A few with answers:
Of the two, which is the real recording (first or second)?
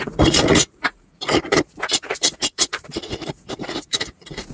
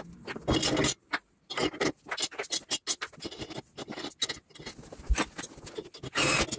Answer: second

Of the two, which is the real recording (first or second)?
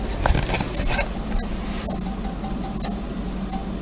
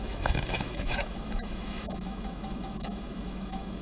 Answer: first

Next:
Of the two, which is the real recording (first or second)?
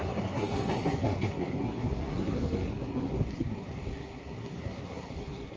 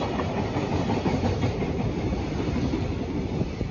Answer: second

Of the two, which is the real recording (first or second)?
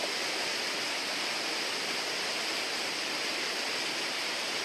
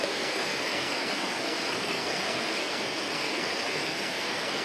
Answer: first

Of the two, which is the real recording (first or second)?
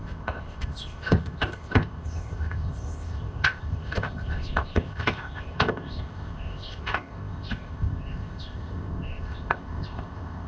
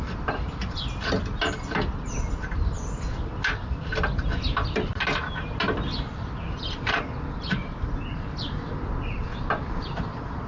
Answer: second